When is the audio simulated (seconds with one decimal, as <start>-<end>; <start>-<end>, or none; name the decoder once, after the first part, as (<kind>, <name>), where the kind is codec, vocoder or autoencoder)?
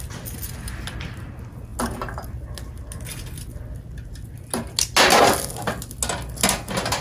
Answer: none